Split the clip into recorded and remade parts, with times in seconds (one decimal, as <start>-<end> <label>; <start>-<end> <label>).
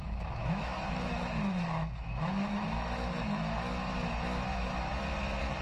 0.0-3.4 remade; 3.4-5.6 recorded